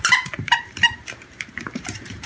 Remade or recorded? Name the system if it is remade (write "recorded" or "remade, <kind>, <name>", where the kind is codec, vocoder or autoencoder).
remade, vocoder, BigVGAN v2